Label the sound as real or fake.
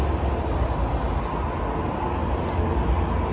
real